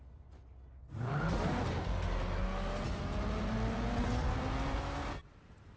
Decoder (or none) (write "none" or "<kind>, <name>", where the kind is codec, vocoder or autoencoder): none